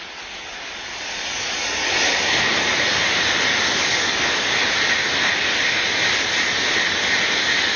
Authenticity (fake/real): real